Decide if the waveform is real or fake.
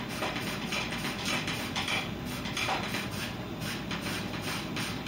real